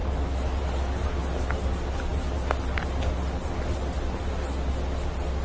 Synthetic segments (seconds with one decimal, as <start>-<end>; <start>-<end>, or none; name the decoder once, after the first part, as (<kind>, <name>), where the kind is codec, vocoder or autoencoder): none